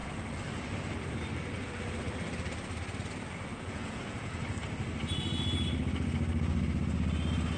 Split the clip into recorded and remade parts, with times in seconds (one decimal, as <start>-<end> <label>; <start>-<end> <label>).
0.0-3.5 recorded; 3.5-4.3 remade; 4.3-7.6 recorded